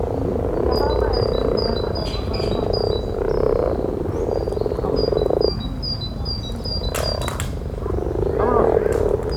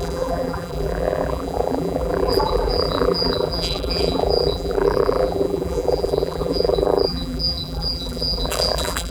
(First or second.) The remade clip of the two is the second